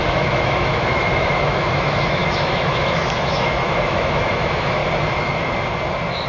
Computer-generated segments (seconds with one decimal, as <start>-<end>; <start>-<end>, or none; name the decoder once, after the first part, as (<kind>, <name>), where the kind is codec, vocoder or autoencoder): 0.0-4.8 (autoencoder, DAC-VAE)